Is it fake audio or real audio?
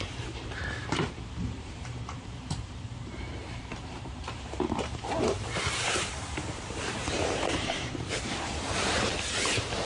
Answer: fake